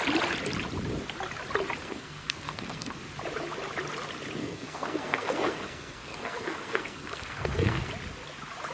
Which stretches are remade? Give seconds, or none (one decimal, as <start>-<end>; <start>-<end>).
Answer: 1.8-3.0; 4.4-7.9